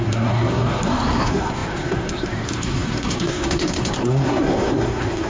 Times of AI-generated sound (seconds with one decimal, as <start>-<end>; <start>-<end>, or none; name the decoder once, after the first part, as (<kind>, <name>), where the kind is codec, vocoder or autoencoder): 0.0-5.3 (codec, SNAC)